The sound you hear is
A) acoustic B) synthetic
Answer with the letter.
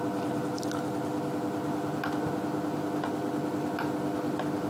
A